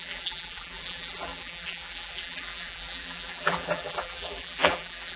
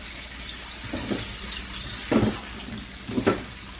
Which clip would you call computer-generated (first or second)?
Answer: first